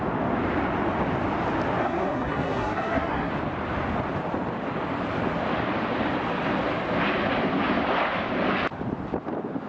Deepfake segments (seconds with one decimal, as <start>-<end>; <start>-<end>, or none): 1.8-3.3